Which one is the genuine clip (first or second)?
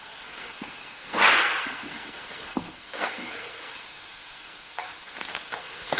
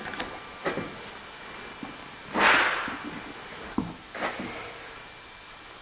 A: second